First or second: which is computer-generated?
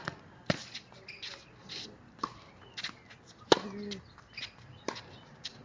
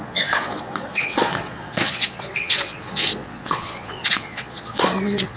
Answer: second